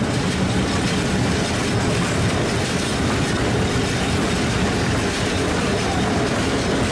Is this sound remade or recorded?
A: recorded